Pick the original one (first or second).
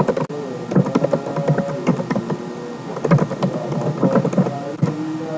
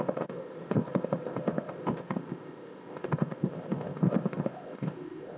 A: first